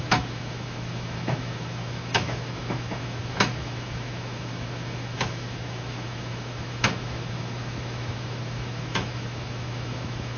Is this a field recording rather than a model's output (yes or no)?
no